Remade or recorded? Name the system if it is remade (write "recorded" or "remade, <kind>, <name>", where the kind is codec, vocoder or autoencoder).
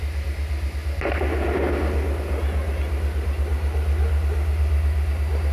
recorded